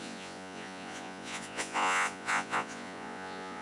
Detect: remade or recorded remade